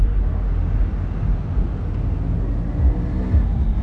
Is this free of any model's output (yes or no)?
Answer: yes